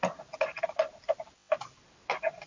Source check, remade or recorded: recorded